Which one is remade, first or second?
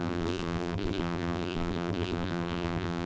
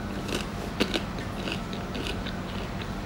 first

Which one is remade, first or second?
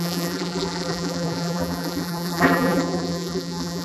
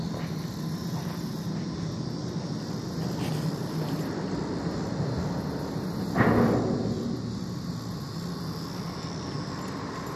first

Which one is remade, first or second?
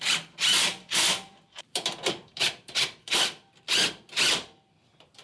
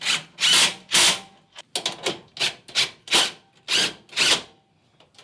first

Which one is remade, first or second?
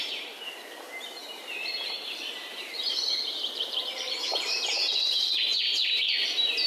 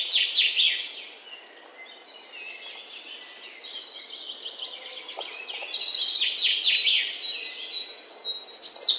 first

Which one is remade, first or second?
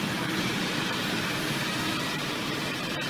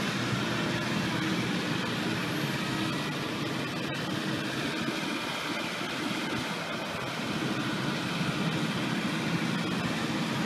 first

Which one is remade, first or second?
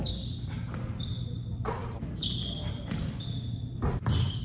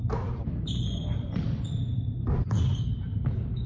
second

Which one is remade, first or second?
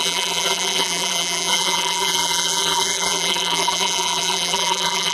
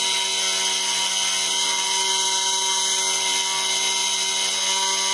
first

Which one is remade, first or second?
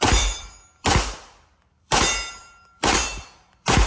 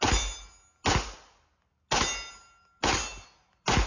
first